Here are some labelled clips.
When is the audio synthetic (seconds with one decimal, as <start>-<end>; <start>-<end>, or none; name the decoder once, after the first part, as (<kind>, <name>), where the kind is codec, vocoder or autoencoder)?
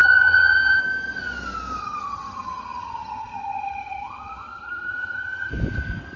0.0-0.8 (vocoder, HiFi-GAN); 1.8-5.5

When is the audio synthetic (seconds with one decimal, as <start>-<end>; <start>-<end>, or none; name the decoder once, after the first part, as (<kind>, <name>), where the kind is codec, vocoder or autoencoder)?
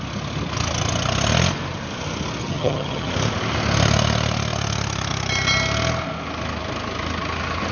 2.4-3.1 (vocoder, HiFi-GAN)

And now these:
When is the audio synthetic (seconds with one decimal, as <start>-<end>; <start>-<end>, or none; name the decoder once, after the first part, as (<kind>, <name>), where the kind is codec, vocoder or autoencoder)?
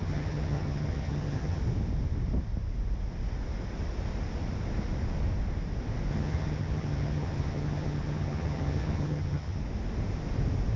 0.0-1.6 (vocoder, HiFi-GAN); 6.1-9.6